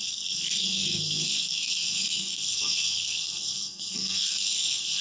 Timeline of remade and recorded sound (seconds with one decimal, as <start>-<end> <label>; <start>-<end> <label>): 0.0-5.0 remade